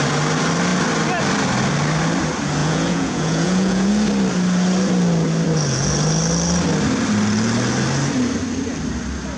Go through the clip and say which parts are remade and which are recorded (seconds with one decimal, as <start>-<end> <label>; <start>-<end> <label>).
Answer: 0.0-2.6 recorded; 2.6-3.9 remade; 3.9-9.4 recorded